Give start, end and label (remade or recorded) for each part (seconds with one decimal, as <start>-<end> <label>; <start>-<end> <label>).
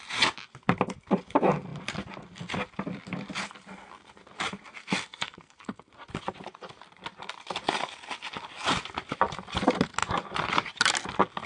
0.0-4.8 recorded; 4.8-5.9 remade; 5.9-11.5 recorded